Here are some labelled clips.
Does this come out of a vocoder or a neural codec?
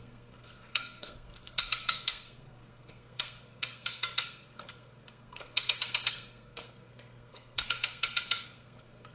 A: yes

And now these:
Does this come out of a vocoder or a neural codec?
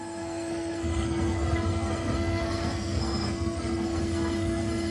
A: yes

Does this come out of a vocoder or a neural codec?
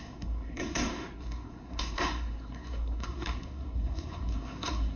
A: yes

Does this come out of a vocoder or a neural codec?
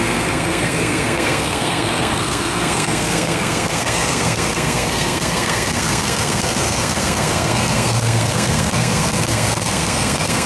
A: yes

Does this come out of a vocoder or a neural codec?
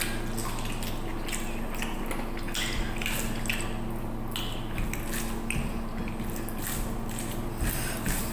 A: no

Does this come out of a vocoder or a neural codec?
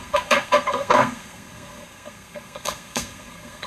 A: yes